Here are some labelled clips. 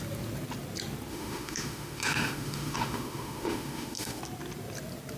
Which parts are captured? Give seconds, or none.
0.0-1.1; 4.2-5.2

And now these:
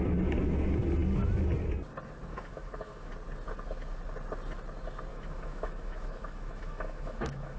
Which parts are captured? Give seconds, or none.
0.0-2.3; 3.1-5.1